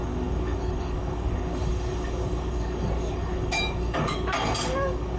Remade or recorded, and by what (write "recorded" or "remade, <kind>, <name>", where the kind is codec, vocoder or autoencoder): remade, codec, DAC